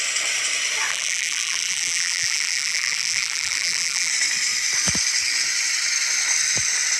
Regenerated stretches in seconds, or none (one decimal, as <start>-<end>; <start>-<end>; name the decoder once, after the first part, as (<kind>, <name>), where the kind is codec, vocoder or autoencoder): 0.9-4.1 (vocoder, BigVGAN v2)